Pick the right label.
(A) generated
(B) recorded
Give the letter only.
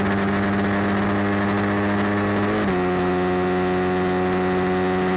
B